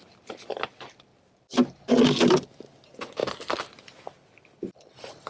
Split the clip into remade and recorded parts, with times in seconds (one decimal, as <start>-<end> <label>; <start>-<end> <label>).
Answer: 0.0-5.3 recorded